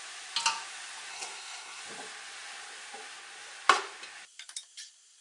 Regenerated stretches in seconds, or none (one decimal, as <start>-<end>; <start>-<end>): 1.1-1.8